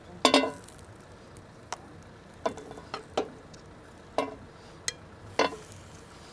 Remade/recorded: recorded